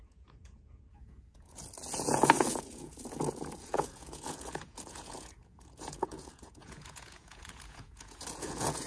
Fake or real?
fake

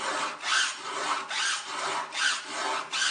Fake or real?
real